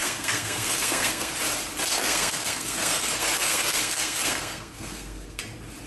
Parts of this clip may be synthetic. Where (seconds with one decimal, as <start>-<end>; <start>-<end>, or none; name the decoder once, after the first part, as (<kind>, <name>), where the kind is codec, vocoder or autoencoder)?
0.0-1.3 (codec, SNAC); 1.9-5.4